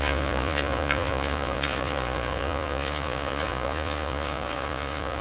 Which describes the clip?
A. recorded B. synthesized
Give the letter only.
B